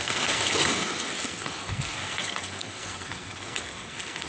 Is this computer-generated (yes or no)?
yes